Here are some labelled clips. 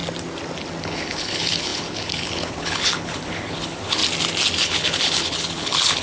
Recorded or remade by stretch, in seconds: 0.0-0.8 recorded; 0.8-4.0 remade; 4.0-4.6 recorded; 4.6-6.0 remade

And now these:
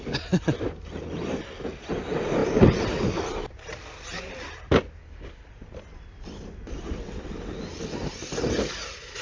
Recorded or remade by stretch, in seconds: 0.0-5.0 recorded; 5.0-5.5 remade; 5.5-9.2 recorded

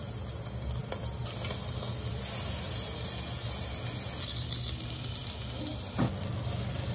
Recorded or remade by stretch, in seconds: 0.0-6.9 recorded

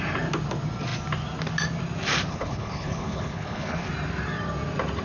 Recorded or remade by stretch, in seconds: 0.0-2.3 recorded; 2.3-3.9 remade; 3.9-5.0 recorded

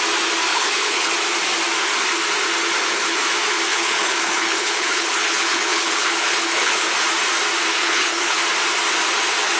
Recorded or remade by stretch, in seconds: 0.0-0.5 recorded; 0.5-1.1 remade; 1.1-3.7 recorded; 3.7-6.9 remade; 6.9-7.7 recorded; 7.7-8.4 remade; 8.4-9.6 recorded

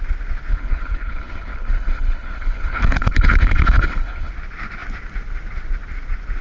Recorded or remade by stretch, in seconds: 0.0-0.5 recorded; 0.5-4.3 remade; 4.3-6.4 recorded